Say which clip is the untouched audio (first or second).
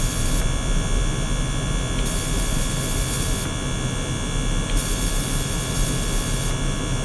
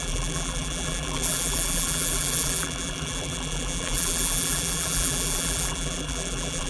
first